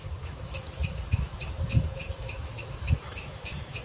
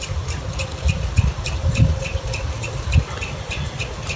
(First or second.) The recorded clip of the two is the second